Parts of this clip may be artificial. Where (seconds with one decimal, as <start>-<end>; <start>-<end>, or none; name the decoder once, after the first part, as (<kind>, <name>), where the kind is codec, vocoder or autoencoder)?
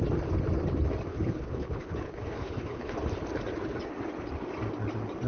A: 1.1-3.0 (codec, HILCodec)